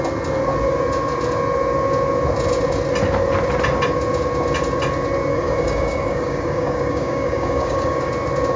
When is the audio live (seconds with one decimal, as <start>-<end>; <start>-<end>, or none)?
0.0-5.3; 8.1-8.6